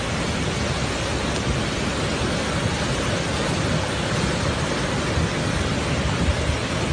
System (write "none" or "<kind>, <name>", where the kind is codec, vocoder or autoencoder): none